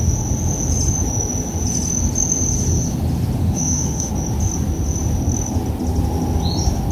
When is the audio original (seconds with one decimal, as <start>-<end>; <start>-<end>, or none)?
0.0-3.4; 4.1-6.9